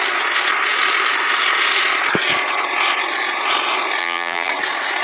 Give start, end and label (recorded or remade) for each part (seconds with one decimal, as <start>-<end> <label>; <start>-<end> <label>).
0.0-4.0 recorded; 4.0-4.5 remade; 4.5-5.0 recorded